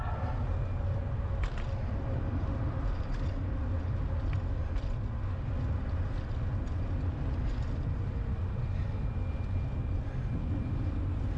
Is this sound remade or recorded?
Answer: recorded